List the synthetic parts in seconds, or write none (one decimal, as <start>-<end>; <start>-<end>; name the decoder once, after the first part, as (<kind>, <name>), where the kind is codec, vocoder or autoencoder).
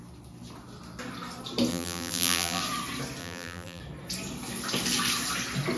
1.7-2.6 (vocoder, BigVGAN v2); 3.2-3.8